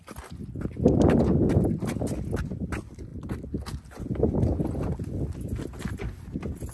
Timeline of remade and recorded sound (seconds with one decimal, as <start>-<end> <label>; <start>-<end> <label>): 0.0-6.7 recorded